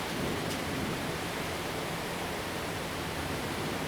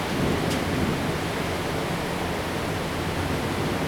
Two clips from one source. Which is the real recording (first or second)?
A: second